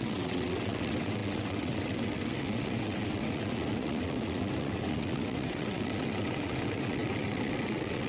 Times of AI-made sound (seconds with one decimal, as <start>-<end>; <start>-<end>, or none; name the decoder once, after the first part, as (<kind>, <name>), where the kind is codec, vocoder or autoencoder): 0.0-8.1 (vocoder, WaveNeXt)